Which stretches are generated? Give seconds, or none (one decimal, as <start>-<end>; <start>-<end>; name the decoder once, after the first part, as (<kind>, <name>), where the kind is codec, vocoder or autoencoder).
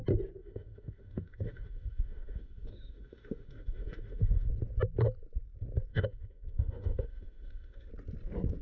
0.4-4.5 (autoencoder, DAC-VAE); 5.9-7.9